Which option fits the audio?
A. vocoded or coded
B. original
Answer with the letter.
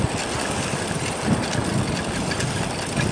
B